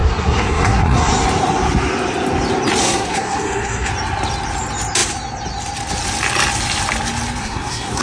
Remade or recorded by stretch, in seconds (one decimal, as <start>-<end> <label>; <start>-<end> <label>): 0.0-1.1 remade; 1.1-2.8 recorded; 2.8-3.9 remade; 3.9-7.4 recorded; 7.4-8.0 remade

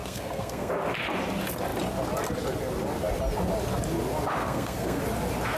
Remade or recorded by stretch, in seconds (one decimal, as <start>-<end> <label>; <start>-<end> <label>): 0.0-0.7 remade; 0.7-4.4 recorded; 4.4-5.0 remade; 5.0-5.6 recorded

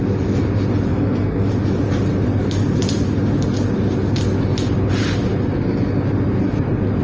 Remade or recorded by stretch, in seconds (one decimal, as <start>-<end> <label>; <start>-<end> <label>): 0.0-0.9 recorded; 0.9-1.5 remade; 1.5-7.0 recorded

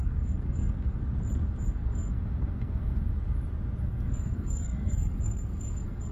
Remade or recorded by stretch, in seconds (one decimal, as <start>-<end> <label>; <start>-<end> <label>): 0.0-1.0 remade; 1.0-1.7 recorded; 1.7-3.1 remade; 3.1-3.8 recorded; 3.8-6.1 remade

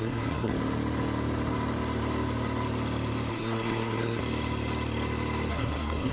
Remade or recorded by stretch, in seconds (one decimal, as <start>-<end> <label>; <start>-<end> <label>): 0.0-0.5 remade; 0.5-3.3 recorded; 3.3-4.2 remade; 4.2-5.5 recorded; 5.5-6.1 remade

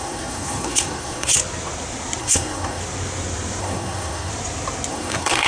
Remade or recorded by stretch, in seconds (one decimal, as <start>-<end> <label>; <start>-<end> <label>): 0.0-1.3 remade; 1.3-2.2 recorded; 2.2-2.8 remade; 2.8-3.6 recorded; 3.6-4.3 remade; 4.3-4.9 recorded; 4.9-5.5 remade

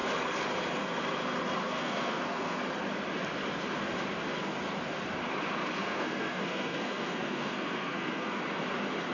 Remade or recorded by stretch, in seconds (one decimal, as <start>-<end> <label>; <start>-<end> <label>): 0.0-1.6 recorded; 1.6-2.7 remade; 2.7-5.8 recorded; 5.8-8.4 remade; 8.4-9.1 recorded

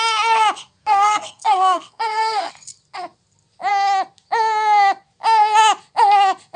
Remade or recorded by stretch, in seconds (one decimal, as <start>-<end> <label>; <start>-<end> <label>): 0.0-0.8 recorded; 0.8-2.5 remade; 2.5-6.6 recorded